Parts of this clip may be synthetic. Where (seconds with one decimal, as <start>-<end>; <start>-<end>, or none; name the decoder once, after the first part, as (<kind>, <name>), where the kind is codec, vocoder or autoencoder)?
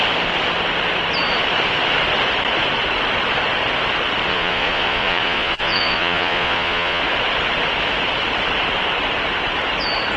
4.3-7.0 (vocoder, Vocos)